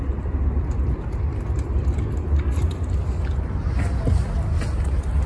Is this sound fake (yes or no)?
no